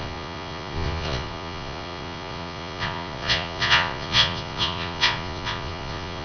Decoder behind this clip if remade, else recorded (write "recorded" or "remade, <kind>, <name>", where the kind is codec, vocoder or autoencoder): remade, vocoder, Vocos